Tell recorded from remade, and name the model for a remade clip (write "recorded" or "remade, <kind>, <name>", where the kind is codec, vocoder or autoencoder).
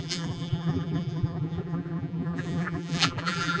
remade, vocoder, BigVGAN v2